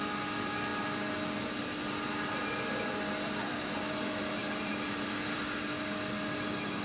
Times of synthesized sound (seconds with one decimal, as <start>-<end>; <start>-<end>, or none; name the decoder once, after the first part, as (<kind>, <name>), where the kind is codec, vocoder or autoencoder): 4.4-5.4 (vocoder, BigVGAN v2)